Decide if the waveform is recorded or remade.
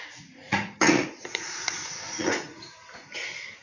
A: remade